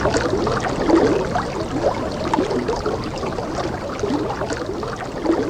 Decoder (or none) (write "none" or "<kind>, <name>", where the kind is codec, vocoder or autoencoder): none